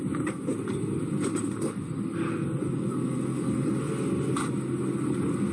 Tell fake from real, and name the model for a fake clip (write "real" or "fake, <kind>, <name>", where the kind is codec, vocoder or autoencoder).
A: real